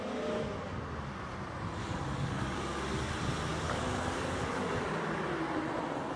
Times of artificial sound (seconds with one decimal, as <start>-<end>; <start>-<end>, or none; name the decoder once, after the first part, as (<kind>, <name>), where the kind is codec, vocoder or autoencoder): 1.8-3.1 (codec, DAC); 3.5-5.2